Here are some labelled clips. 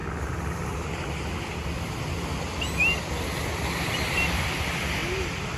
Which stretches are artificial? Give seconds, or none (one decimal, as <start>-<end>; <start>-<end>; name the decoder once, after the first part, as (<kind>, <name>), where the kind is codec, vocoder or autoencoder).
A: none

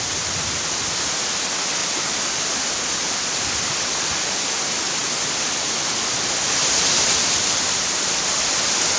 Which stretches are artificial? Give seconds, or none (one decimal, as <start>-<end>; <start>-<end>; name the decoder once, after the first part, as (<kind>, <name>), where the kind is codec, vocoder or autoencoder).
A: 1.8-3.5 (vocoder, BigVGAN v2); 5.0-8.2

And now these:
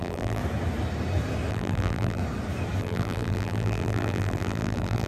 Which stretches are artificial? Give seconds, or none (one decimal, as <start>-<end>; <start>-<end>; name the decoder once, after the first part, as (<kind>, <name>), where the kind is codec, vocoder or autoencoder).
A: 0.0-0.4 (vocoder, BigVGAN v2); 1.5-2.2; 2.8-5.1